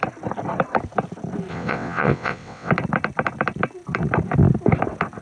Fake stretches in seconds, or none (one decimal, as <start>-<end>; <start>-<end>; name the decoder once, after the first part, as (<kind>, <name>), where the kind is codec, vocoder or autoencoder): 1.5-2.7 (vocoder, WaveNeXt)